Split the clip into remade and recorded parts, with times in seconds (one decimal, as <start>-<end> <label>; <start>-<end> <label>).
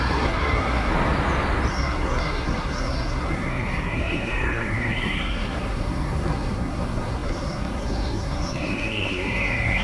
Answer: 0.0-0.9 remade; 0.9-1.7 recorded; 1.7-9.8 remade